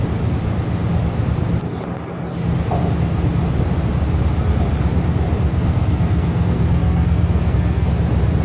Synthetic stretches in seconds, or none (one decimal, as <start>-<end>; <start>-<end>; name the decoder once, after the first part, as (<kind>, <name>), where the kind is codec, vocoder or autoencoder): 5.5-7.9 (codec, SNAC)